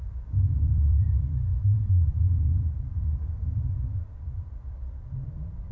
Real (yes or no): no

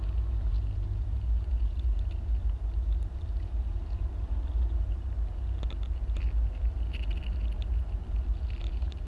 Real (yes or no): yes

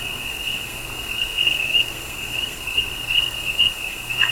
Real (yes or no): no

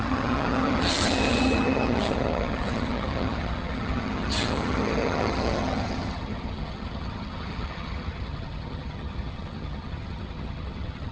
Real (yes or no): no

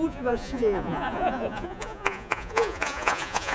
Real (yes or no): no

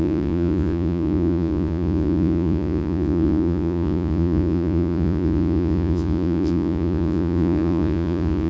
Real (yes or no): no